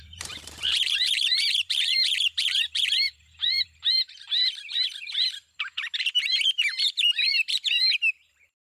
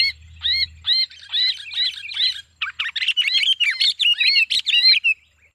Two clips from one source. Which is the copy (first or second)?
first